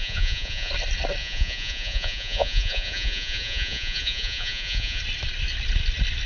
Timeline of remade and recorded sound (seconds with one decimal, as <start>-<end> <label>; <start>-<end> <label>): 0.0-0.7 remade; 0.7-1.2 recorded; 1.2-5.0 remade; 5.0-6.3 recorded